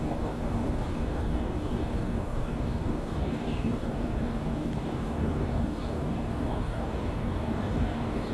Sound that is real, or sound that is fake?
fake